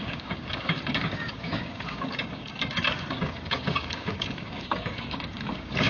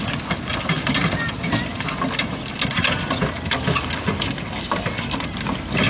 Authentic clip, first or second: second